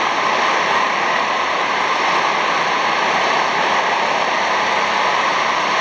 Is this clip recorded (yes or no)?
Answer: yes